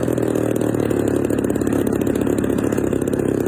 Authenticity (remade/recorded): recorded